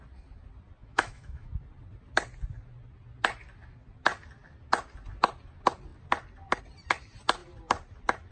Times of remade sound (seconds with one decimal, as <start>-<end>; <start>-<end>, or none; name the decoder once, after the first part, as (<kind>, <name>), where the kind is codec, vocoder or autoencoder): 0.8-1.5 (autoencoder, DAC-VAE)